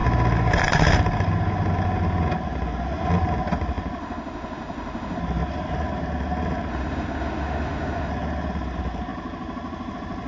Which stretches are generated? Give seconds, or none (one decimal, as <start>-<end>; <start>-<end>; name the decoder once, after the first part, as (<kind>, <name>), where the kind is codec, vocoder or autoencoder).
4.0-5.2 (autoencoder, DAC-VAE); 6.7-8.1

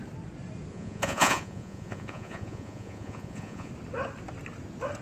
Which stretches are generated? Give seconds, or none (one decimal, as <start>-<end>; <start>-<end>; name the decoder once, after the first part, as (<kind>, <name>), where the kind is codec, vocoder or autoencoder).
0.7-3.7 (vocoder, Vocos)

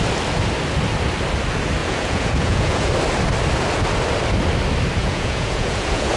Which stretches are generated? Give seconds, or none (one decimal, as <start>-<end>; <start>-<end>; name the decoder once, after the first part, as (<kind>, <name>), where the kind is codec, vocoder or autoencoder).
1.8-2.9 (vocoder, Vocos); 5.0-6.2

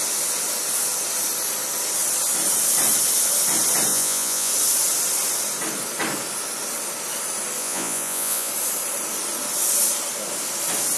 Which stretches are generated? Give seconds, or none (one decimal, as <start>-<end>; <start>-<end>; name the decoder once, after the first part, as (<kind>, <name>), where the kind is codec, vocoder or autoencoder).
3.9-4.5 (vocoder, Vocos); 7.6-8.5

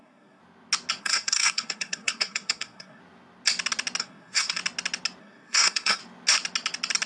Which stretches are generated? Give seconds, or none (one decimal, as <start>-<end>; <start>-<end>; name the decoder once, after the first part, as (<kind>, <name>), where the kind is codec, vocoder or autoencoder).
0.0-0.4 (codec, SNAC); 1.0-3.0; 4.0-4.6; 5.2-6.0

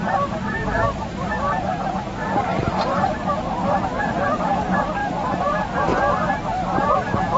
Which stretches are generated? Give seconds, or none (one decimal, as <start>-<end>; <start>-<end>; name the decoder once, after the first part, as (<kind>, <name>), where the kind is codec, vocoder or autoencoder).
0.0-5.0 (vocoder, BigVGAN v2); 6.0-7.4